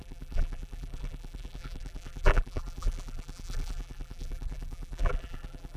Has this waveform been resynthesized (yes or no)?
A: yes